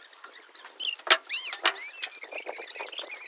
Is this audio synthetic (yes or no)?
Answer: no